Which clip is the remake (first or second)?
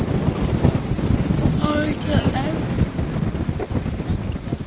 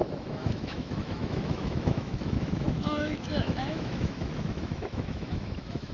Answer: second